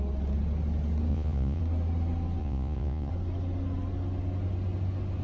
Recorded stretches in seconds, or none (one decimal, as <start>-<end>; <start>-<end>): 0.0-1.1; 1.6-2.4; 3.1-5.2